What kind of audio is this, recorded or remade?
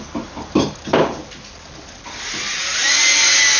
recorded